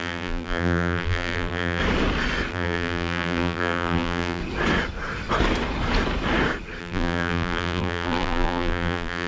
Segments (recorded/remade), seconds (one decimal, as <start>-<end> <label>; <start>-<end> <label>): 0.0-1.8 remade; 1.8-2.5 recorded; 2.5-4.4 remade; 4.4-6.8 recorded; 6.8-9.3 remade